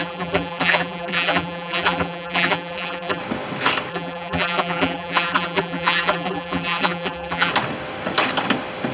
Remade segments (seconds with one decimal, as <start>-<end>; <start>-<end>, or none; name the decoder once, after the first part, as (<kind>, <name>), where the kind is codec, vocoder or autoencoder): 0.0-3.2 (vocoder, BigVGAN v2); 3.9-7.5